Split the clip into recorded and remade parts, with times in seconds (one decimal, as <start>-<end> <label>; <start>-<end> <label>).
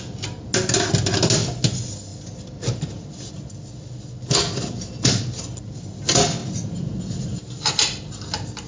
0.0-8.7 recorded